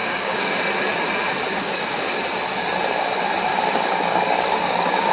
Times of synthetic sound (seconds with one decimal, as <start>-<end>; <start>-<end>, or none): 0.0-0.7; 1.5-2.2; 3.5-5.1